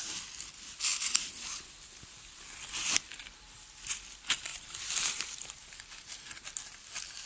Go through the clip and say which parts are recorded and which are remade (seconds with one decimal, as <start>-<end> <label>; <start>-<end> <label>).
0.0-4.5 recorded; 4.5-5.5 remade; 5.5-7.3 recorded

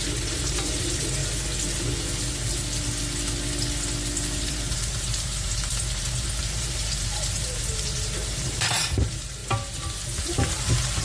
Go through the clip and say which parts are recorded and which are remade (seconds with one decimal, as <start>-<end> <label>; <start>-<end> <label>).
0.0-1.2 remade; 1.2-4.5 recorded; 4.5-9.4 remade; 9.4-10.2 recorded; 10.2-11.0 remade

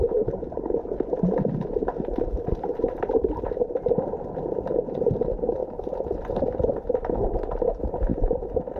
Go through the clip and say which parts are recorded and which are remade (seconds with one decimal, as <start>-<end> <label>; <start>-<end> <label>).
0.0-5.6 remade; 5.6-6.9 recorded; 6.9-8.8 remade

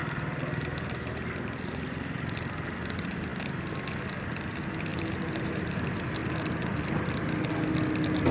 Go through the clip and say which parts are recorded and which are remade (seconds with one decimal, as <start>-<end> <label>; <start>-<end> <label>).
0.0-2.2 remade; 2.2-4.9 recorded; 4.9-5.8 remade; 5.8-6.2 recorded; 6.2-6.8 remade; 6.8-8.3 recorded

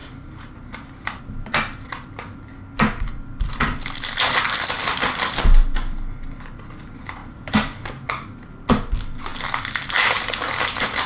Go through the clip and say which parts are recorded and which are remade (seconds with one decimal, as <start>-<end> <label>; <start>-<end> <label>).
0.0-1.2 remade; 1.2-11.1 recorded

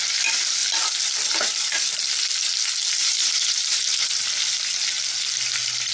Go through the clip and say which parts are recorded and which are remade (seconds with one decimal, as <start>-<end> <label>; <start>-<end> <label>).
0.0-3.0 recorded; 3.0-4.1 remade; 4.1-5.9 recorded

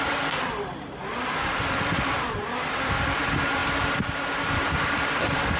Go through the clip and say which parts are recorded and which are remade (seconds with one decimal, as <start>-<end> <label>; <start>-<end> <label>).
0.0-3.6 remade; 3.6-4.7 recorded; 4.7-5.6 remade